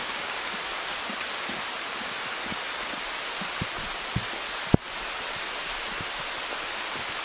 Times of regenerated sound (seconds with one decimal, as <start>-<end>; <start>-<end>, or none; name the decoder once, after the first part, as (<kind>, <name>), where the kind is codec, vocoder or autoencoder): 0.0-0.5 (codec, DAC)